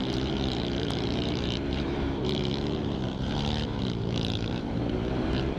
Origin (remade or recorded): remade